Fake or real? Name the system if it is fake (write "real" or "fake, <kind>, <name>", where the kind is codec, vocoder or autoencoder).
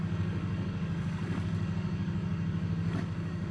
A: fake, codec, DAC